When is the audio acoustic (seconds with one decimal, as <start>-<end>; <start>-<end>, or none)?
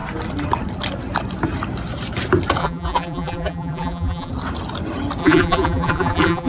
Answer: 0.0-2.6; 4.3-5.2